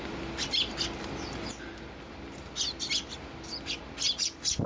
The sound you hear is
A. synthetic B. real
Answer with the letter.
B